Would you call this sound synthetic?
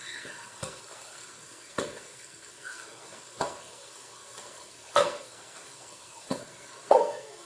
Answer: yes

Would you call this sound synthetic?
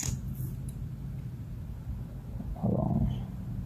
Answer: no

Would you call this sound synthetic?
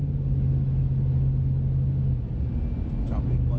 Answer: no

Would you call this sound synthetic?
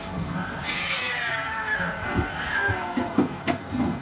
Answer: yes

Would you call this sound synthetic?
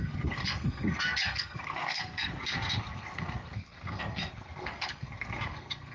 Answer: yes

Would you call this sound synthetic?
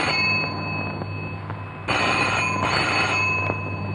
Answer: no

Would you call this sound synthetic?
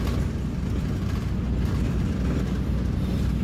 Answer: no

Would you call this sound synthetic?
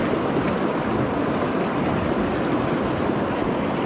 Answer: no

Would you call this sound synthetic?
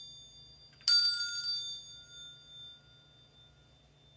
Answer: no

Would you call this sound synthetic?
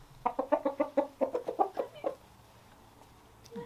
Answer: no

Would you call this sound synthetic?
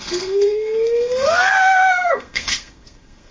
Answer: yes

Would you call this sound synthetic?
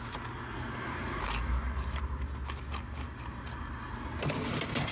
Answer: no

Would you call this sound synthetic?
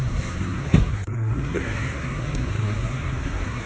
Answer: yes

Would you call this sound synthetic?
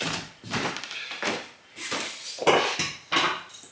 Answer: no